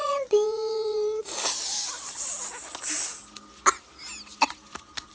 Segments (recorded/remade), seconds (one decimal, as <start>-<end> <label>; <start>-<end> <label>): 0.0-1.2 remade; 1.2-5.1 recorded